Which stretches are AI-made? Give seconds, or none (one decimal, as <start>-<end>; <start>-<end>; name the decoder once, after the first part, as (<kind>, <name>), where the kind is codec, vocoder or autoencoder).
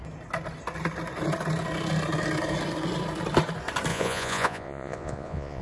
3.9-5.6 (vocoder, Vocos)